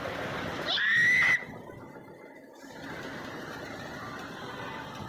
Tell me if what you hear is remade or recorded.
recorded